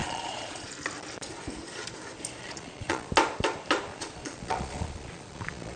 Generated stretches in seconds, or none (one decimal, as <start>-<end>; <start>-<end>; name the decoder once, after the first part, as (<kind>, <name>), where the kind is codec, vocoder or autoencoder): 0.0-0.7 (vocoder, Vocos); 2.4-3.1; 3.9-5.8